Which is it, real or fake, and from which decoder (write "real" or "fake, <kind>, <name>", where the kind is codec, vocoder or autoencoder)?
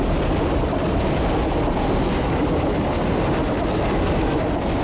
real